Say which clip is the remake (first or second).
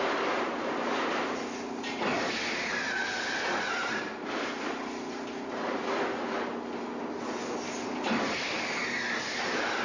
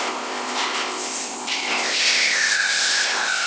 second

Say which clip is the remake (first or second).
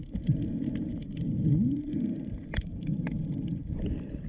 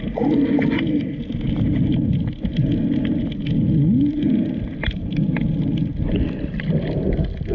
first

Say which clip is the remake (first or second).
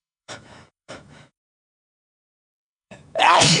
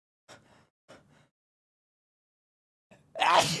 first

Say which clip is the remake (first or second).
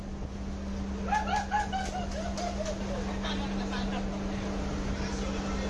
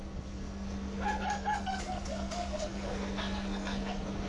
second